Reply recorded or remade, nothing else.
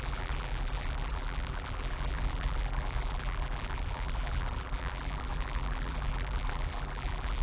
remade